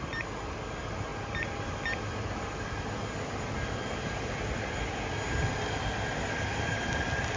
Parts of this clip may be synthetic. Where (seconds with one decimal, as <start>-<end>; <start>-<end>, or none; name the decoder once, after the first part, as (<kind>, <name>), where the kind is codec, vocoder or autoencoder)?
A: none